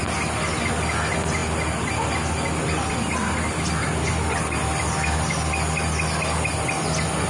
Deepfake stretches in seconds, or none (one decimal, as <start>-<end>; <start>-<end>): none